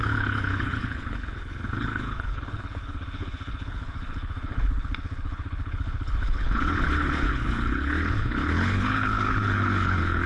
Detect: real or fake fake